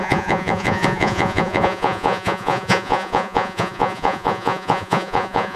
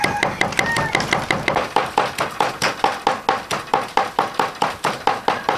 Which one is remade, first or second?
first